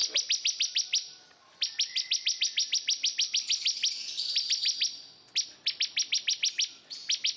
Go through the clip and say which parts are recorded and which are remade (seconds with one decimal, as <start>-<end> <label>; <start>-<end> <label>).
0.0-7.4 recorded